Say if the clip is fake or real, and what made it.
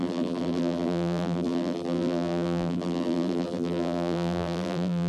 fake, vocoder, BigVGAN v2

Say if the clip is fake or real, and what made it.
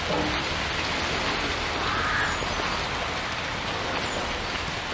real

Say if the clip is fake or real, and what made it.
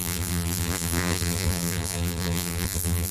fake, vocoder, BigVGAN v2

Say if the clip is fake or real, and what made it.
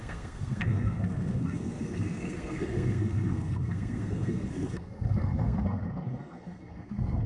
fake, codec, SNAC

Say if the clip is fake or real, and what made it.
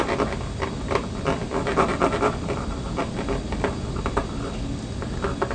real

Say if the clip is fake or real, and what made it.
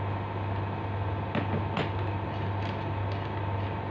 real